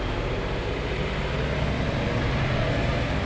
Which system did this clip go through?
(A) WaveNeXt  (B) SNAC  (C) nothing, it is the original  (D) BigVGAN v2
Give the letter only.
C